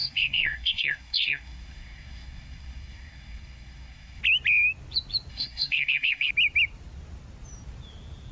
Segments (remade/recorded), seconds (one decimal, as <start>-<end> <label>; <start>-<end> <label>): 0.0-4.2 remade; 4.2-5.3 recorded; 5.3-6.3 remade; 6.3-8.3 recorded